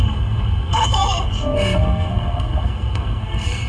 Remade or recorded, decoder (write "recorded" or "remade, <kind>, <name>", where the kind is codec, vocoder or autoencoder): remade, codec, SNAC